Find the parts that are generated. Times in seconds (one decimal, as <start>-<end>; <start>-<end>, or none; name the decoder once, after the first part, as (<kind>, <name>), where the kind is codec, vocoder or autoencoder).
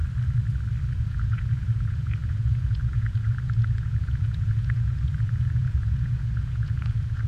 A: 1.0-7.3 (vocoder, Vocos)